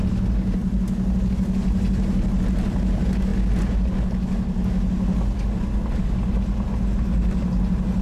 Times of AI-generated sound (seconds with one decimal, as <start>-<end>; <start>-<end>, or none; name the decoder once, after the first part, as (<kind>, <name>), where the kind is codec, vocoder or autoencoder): 0.6-1.2 (vocoder, BigVGAN v2)